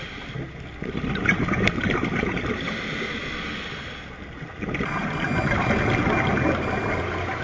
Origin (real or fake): real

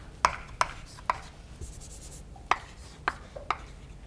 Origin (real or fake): real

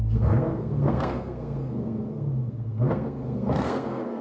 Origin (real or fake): fake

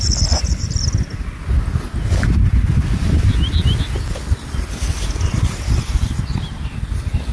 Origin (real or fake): real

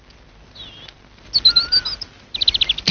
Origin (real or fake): real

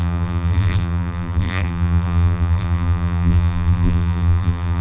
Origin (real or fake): fake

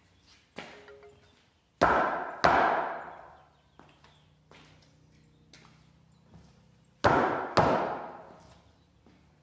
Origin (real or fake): real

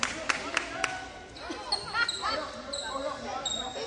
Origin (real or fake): real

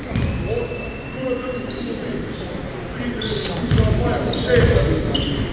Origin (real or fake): real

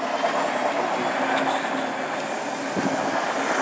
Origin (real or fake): real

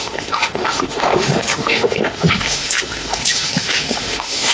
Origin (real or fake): fake